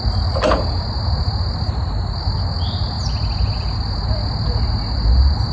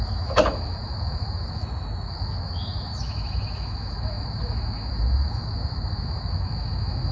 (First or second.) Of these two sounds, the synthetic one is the second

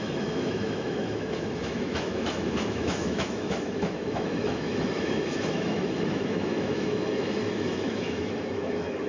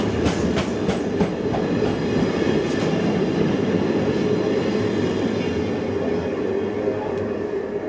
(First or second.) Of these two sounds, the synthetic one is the first